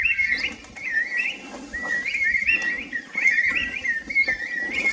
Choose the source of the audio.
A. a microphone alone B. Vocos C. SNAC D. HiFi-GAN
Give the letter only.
A